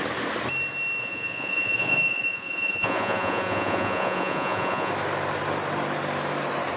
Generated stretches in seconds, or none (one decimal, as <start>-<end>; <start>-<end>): 1.0-4.9